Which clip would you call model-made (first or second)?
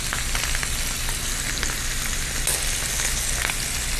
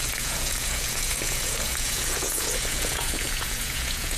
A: second